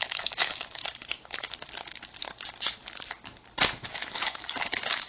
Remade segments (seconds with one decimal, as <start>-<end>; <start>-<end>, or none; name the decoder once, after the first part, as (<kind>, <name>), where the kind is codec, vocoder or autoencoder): 0.0-0.8 (autoencoder, DAC-VAE); 3.9-5.1